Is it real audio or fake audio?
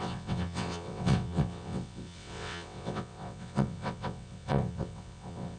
fake